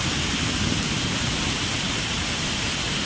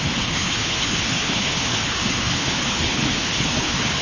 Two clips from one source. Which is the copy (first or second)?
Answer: second